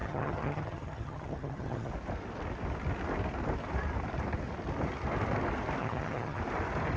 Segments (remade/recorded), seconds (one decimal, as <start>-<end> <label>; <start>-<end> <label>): 0.0-1.9 remade; 1.9-5.8 recorded; 5.8-6.4 remade; 6.4-7.0 recorded